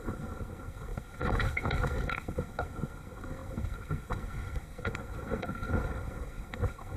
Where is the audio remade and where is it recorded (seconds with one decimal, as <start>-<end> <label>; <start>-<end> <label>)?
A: 0.0-7.0 remade